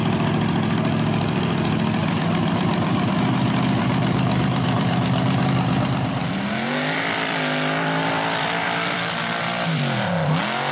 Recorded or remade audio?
remade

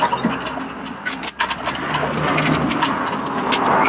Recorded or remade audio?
recorded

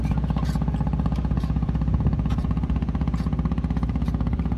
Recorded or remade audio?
remade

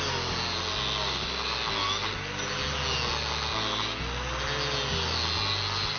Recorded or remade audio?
recorded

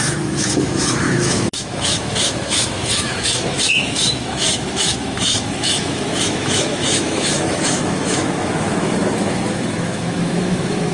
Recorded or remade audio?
remade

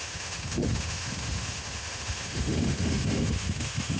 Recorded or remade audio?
remade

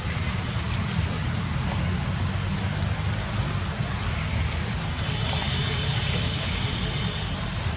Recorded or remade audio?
recorded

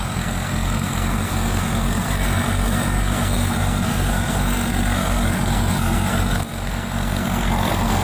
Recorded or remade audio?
remade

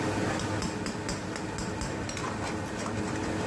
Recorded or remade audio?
recorded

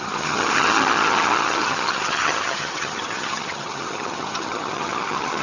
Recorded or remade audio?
remade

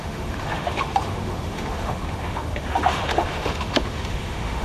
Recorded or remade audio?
remade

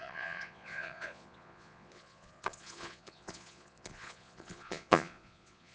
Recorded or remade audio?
remade